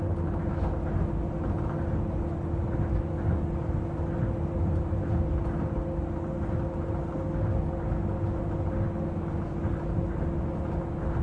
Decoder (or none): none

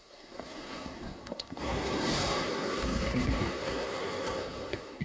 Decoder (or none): codec, SNAC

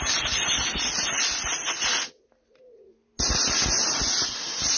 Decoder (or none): none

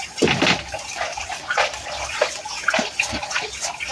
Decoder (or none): none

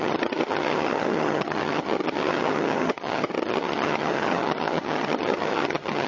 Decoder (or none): vocoder, HiFi-GAN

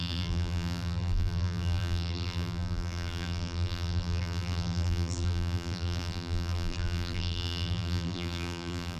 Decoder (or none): vocoder, BigVGAN v2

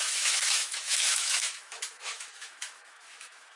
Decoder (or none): autoencoder, DAC-VAE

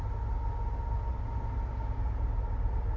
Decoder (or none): none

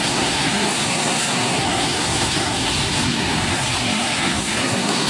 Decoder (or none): codec, SNAC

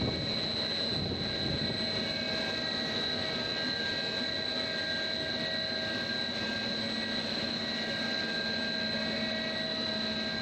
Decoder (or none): none